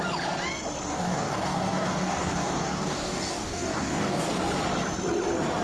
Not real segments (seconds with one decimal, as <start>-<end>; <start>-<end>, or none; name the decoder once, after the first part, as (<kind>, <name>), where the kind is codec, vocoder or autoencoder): 0.9-4.3 (codec, DAC)